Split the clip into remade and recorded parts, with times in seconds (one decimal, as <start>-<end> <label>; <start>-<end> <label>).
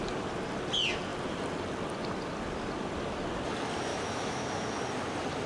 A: 0.0-3.9 recorded; 3.9-4.8 remade; 4.8-5.5 recorded